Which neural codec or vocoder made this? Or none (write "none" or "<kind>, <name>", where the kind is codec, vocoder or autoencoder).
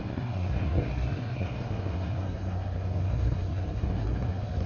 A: codec, SNAC